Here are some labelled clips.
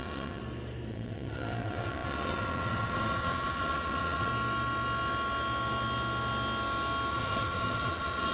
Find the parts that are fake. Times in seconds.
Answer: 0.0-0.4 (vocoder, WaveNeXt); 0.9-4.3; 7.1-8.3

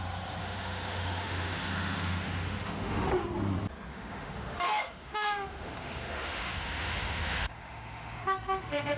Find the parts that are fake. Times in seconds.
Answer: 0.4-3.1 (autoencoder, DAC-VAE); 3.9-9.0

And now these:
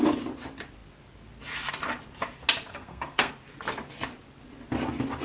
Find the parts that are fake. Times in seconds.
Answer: 2.7-3.3 (codec, SNAC)

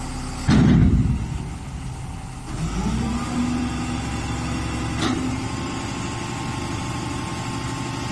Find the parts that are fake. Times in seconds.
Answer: none

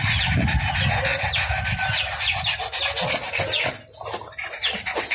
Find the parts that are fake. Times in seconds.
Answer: none

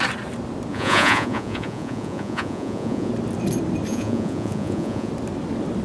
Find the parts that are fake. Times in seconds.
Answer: 0.7-3.1 (vocoder, Vocos); 3.9-5.1

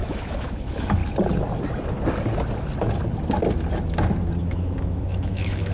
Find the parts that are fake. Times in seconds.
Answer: 0.0-1.0 (autoencoder, DAC-VAE); 4.4-5.7